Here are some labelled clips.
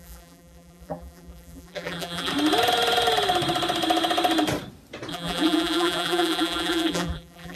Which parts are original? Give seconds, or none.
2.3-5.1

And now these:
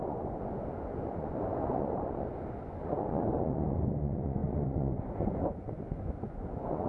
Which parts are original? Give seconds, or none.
none

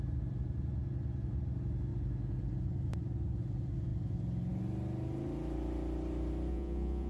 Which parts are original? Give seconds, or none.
0.0-6.5

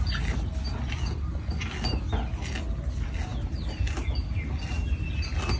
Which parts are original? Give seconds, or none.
0.0-5.6

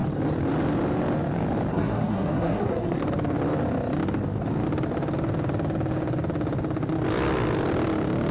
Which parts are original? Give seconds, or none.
0.0-1.7; 3.0-8.3

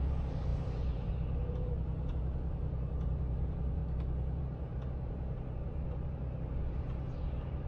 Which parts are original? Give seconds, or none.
3.8-4.4

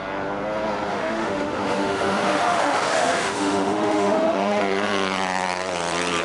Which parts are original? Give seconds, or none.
0.0-0.9; 4.6-6.2